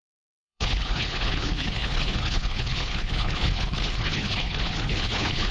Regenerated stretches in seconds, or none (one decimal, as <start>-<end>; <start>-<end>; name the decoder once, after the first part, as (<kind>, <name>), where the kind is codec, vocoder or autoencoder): 0.0-5.5 (codec, HILCodec)